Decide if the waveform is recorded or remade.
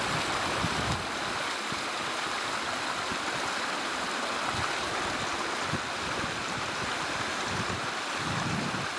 recorded